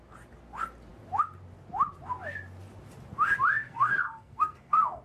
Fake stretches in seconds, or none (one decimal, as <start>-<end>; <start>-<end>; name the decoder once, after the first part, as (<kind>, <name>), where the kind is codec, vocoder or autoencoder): 3.6-5.0 (codec, SNAC)